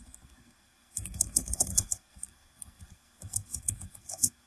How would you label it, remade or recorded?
remade